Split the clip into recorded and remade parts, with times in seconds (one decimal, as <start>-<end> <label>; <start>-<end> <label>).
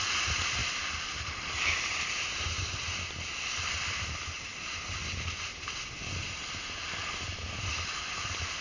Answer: 0.0-8.6 recorded